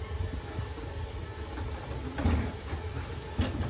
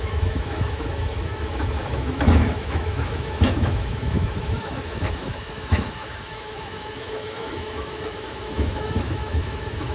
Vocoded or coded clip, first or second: second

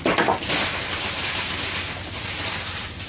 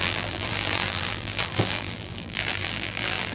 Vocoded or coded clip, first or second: second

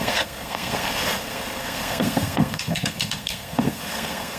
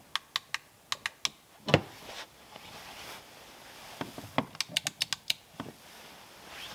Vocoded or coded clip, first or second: first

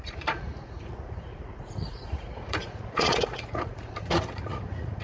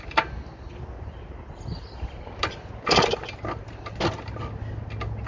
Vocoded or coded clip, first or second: first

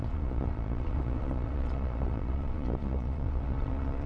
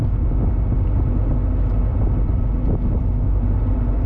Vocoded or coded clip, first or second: first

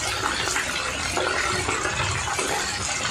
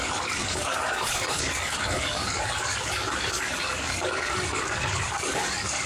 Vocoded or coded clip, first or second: second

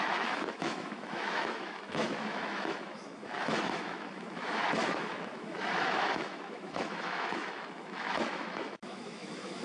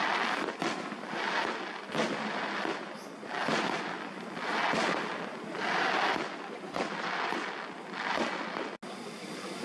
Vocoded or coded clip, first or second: first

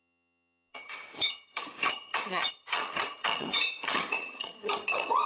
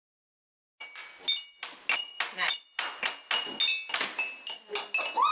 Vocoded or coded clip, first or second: first